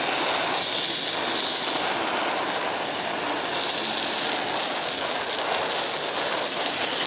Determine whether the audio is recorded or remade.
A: recorded